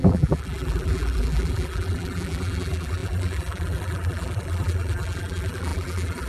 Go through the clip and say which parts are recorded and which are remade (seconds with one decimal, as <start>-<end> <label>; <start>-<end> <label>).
0.0-6.3 remade